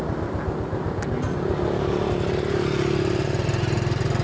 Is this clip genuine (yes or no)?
yes